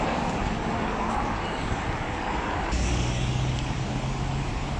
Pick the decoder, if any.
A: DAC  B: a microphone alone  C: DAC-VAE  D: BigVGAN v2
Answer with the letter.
A